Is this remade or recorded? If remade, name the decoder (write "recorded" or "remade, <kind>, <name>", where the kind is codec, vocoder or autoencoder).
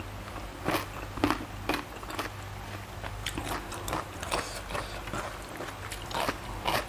recorded